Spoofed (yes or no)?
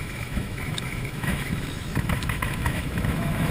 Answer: yes